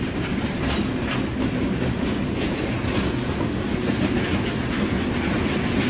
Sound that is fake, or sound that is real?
real